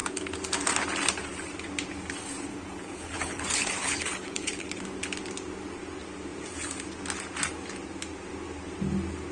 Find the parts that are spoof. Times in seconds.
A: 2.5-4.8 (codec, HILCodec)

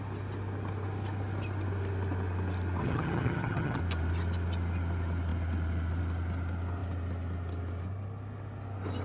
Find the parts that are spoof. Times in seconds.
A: 2.8-3.8 (vocoder, HiFi-GAN)

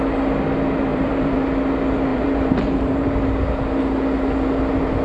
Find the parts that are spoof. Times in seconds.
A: 0.9-1.5 (vocoder, BigVGAN v2); 2.1-3.2

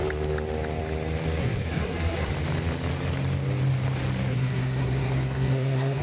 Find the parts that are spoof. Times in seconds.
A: 1.4-2.3 (codec, SNAC); 4.3-6.0

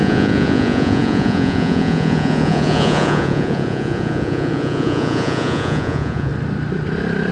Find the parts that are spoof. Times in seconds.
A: 0.0-6.3 (vocoder, Vocos)

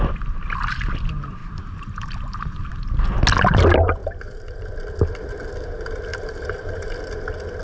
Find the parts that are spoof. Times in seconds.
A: 1.4-2.7 (vocoder, BigVGAN v2); 4.0-4.7; 6.1-6.9

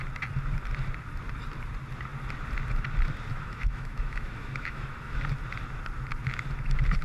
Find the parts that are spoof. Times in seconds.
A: 3.3-5.2 (autoencoder, DAC-VAE)

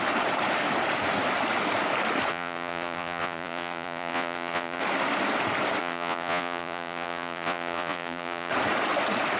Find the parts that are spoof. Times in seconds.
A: 2.3-4.8 (vocoder, Vocos); 5.8-8.5